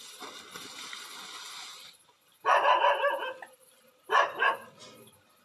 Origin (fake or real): real